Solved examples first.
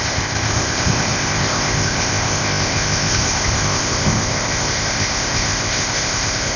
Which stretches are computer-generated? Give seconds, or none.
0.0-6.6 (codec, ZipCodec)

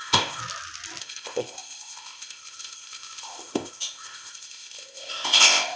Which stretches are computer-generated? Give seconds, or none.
0.0-0.4 (codec, ZipCodec); 1.0-5.8

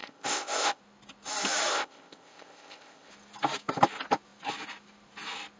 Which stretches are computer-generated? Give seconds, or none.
0.0-0.8 (codec, ZipCodec); 1.7-3.1

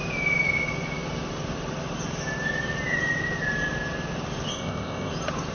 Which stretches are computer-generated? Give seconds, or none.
4.5-5.1 (codec, ZipCodec)